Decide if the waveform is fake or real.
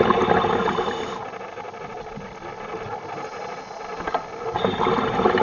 real